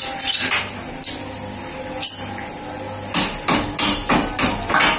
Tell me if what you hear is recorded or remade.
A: recorded